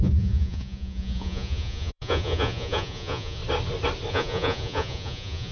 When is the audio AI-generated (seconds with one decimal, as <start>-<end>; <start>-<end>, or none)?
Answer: 0.0-3.4; 4.1-5.5